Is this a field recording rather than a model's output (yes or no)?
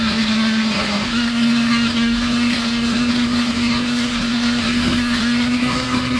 no